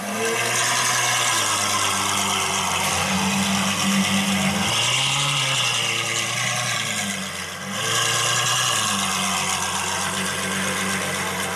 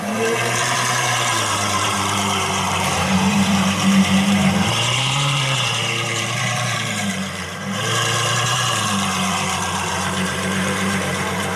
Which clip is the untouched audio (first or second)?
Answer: first